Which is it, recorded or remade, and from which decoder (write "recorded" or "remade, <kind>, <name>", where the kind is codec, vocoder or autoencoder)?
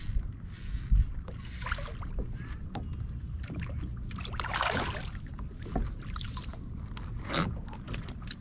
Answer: recorded